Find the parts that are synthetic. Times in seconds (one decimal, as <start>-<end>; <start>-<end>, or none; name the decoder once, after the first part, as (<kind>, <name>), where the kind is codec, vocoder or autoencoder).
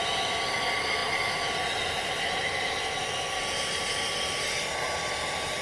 none